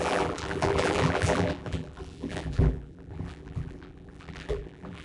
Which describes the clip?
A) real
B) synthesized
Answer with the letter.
B